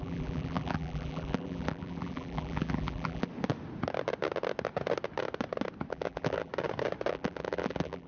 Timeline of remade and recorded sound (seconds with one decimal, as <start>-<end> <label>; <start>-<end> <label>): 0.0-3.3 remade; 3.3-5.9 recorded; 5.9-6.5 remade; 6.5-7.1 recorded; 7.1-8.1 remade